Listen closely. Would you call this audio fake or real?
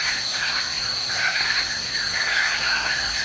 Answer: fake